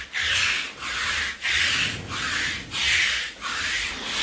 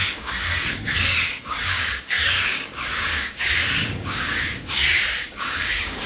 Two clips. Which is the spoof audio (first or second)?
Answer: second